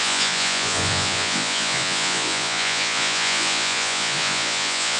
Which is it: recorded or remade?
remade